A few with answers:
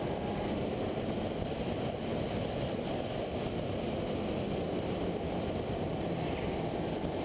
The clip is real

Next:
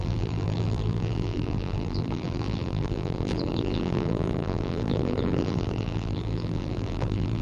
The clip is fake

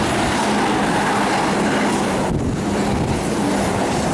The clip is real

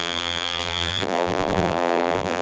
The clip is fake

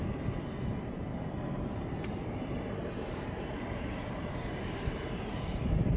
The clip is fake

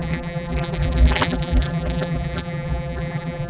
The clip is fake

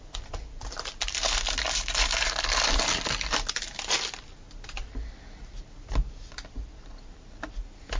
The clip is real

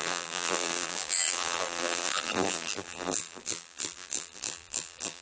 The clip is fake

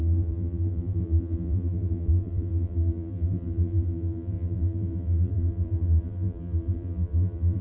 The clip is fake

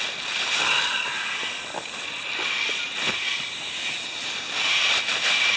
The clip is fake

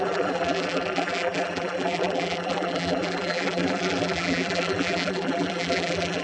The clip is fake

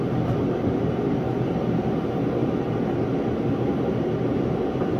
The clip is fake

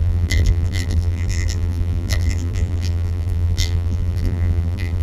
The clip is fake